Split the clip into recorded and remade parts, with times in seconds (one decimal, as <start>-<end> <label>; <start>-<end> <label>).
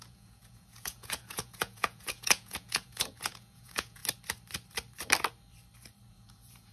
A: 0.0-4.0 remade; 4.0-6.1 recorded; 6.1-6.7 remade